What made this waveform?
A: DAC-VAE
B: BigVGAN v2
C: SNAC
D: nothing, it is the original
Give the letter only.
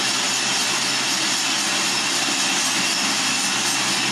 D